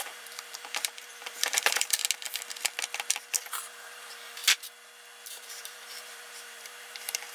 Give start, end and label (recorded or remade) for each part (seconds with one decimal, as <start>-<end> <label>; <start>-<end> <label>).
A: 0.0-2.0 remade; 2.0-3.5 recorded; 3.5-4.4 remade; 4.4-5.3 recorded; 5.3-7.3 remade